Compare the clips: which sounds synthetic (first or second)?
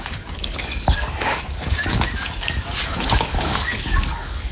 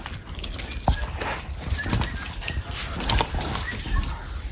first